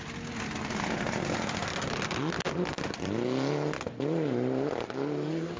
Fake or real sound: real